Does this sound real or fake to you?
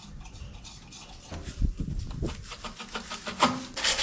real